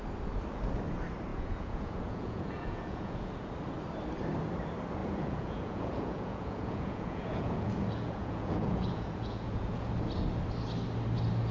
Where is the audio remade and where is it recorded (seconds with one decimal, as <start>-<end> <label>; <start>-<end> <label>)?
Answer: 0.0-1.3 recorded; 1.3-3.5 remade; 3.5-5.0 recorded; 5.0-9.9 remade; 9.9-11.5 recorded